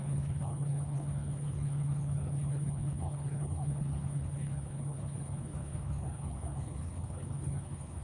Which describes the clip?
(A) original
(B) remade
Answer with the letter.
B